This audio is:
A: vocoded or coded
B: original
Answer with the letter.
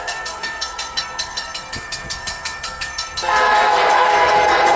A